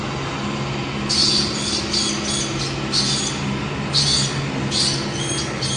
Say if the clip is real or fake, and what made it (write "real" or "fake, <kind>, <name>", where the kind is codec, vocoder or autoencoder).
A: real